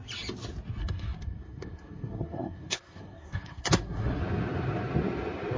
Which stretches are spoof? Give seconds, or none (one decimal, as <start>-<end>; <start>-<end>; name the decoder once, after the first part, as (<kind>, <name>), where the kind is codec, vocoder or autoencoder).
0.8-4.2 (codec, SNAC)